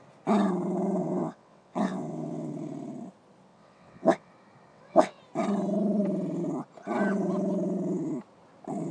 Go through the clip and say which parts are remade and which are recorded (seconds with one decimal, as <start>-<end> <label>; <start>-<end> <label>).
0.0-1.0 recorded; 1.0-2.5 remade; 2.5-3.5 recorded; 3.5-4.3 remade; 4.3-4.7 recorded; 4.7-5.2 remade; 5.2-8.9 recorded